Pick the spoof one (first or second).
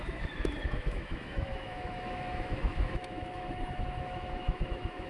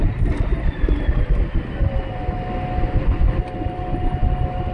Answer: first